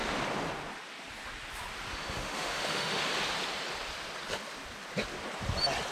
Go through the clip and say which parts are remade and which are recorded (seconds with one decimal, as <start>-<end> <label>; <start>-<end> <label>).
0.0-1.9 recorded; 1.9-3.0 remade; 3.0-5.9 recorded